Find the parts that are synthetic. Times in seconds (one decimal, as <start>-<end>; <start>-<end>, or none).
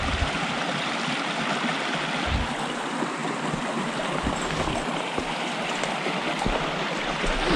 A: none